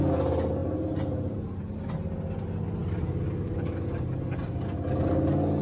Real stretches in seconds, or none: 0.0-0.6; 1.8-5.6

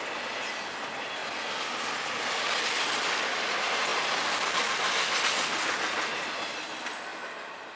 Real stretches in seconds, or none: 0.0-7.8

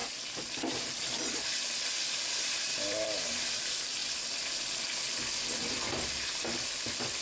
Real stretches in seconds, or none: 0.0-1.0; 4.0-7.2

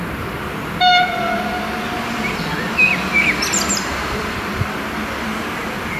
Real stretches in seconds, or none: 1.1-2.0